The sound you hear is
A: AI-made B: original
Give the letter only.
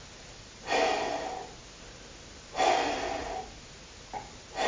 B